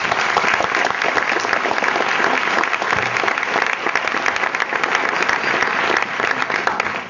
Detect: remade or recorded recorded